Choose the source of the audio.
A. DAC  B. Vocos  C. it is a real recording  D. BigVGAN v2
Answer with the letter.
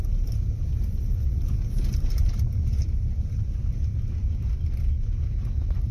D